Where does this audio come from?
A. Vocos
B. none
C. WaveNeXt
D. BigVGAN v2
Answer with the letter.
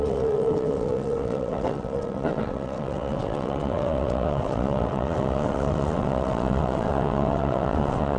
C